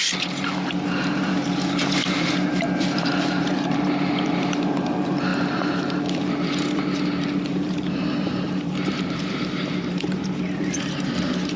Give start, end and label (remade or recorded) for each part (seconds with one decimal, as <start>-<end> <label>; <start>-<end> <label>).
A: 0.0-11.6 remade